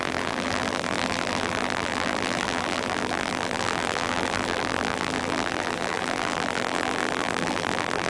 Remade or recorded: remade